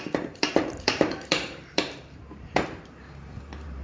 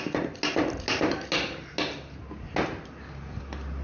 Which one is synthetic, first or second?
first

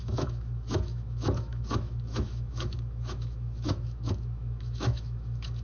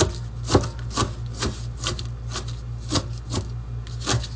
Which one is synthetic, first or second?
first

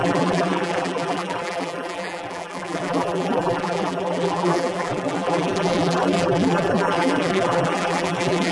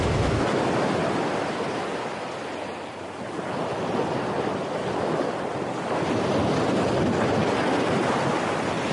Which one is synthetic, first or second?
first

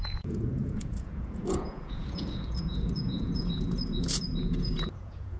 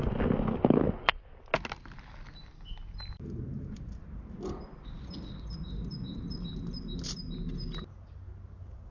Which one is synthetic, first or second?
first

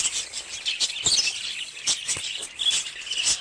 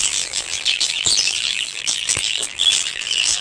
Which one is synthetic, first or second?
second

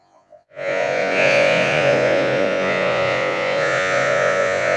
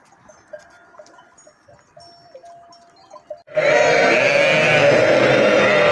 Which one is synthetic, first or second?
first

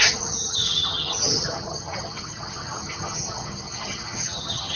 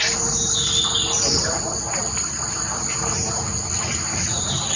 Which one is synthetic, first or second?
first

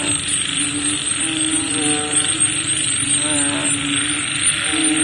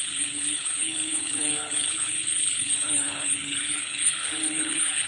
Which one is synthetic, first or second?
second